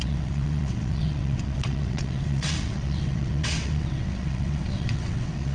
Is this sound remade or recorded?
remade